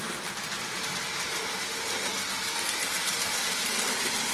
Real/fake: real